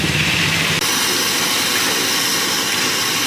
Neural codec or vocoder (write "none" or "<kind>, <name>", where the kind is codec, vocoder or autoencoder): none